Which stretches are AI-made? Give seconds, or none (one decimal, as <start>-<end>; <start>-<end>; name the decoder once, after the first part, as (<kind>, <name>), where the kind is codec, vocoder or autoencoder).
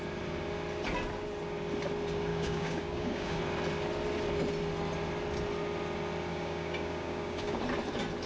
2.3-3.4 (codec, DAC); 6.3-7.6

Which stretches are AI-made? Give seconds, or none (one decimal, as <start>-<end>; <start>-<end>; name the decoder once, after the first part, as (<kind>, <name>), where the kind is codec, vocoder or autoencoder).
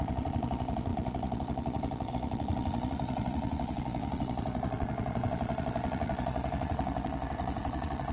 0.0-8.1 (vocoder, Vocos)